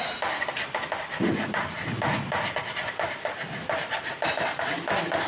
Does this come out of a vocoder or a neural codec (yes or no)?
no